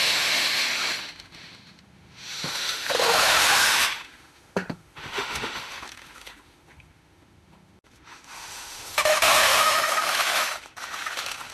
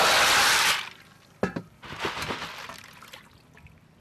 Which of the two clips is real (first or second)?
second